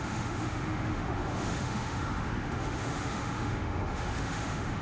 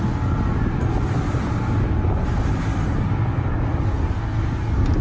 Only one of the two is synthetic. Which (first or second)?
first